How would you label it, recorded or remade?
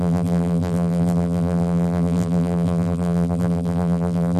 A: remade